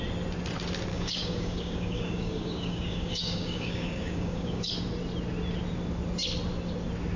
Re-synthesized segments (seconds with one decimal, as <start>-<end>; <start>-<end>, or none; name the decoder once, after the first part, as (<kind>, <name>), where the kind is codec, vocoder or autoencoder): 0.9-4.7 (codec, DAC)